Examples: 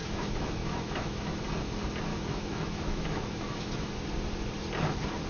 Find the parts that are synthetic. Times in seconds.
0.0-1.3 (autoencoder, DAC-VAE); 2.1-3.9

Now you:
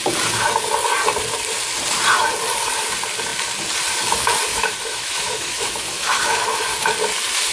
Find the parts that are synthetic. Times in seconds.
4.5-6.9 (autoencoder, DAC-VAE)

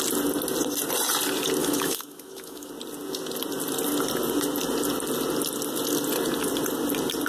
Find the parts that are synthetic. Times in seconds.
1.6-2.7 (autoencoder, DAC-VAE)